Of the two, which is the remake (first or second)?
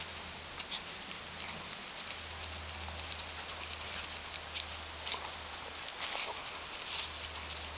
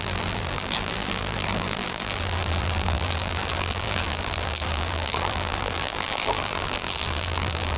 second